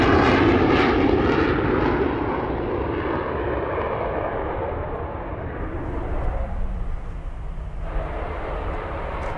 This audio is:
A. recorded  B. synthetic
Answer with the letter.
A